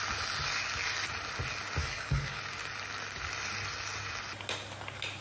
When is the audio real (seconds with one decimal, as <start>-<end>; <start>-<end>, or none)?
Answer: 0.0-1.8; 2.4-5.2